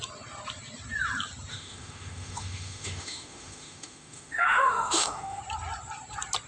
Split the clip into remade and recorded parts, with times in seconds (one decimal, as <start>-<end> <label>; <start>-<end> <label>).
0.0-1.5 recorded; 1.5-5.4 remade; 5.4-6.5 recorded